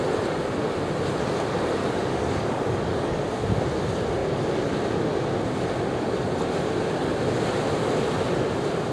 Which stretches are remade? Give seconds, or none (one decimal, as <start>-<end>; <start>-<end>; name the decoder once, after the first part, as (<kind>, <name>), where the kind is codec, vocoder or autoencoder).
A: 1.8-3.2 (codec, DAC)